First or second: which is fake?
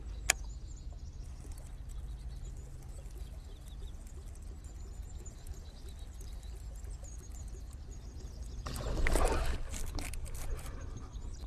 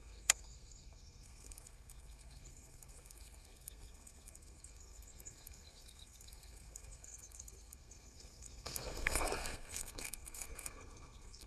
second